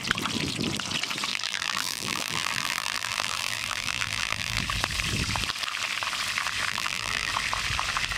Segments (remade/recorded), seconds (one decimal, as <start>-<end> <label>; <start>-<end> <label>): 0.0-1.3 recorded; 1.3-4.6 remade; 4.6-6.7 recorded; 6.7-7.3 remade; 7.3-8.2 recorded

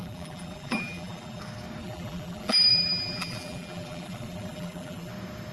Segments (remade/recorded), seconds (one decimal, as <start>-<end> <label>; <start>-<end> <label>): 0.0-1.4 remade; 1.4-1.8 recorded; 1.8-5.1 remade; 5.1-5.5 recorded

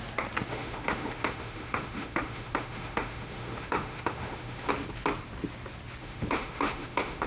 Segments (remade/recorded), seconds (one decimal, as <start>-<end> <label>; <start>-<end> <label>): 0.0-0.5 recorded; 0.5-4.7 remade; 4.7-6.0 recorded; 6.0-7.3 remade

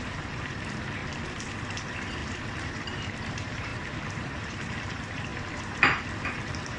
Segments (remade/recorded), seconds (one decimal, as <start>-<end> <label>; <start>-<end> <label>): 0.0-1.0 remade; 1.0-1.5 recorded; 1.5-6.8 remade

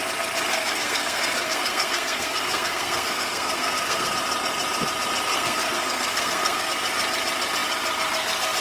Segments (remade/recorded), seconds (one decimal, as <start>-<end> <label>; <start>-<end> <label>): 0.0-0.5 recorded; 0.5-4.1 remade; 4.1-5.3 recorded; 5.3-6.7 remade; 6.7-8.6 recorded

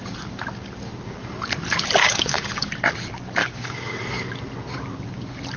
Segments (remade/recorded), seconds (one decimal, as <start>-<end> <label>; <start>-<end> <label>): 0.0-2.0 recorded; 2.0-2.7 remade; 2.7-3.4 recorded; 3.4-4.0 remade; 4.0-5.6 recorded

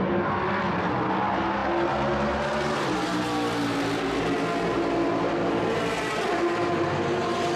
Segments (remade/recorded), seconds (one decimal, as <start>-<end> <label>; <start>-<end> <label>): 0.0-7.6 recorded